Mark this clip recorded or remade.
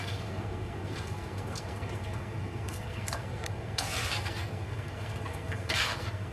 remade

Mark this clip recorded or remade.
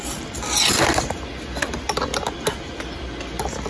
recorded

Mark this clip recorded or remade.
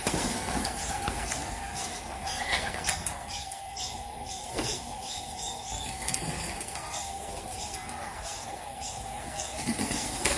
remade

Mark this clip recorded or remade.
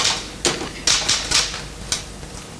recorded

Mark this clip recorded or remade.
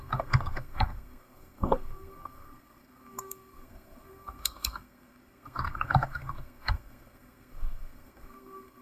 remade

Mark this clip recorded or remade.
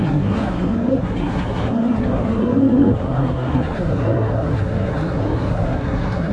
remade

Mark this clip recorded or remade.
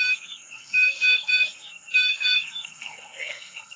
remade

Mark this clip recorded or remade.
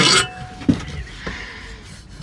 recorded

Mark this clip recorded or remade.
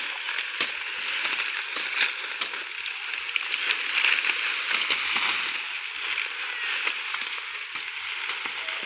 recorded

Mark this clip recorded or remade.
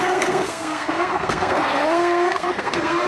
remade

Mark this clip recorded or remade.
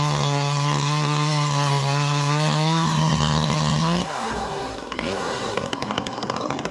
remade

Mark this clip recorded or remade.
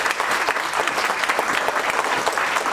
recorded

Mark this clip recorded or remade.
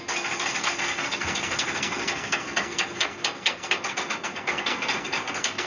remade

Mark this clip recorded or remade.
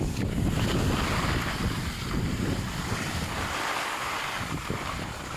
recorded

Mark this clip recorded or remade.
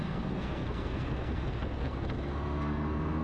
remade